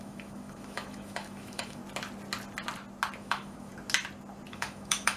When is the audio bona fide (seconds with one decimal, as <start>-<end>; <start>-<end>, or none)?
1.8-3.2; 3.7-4.5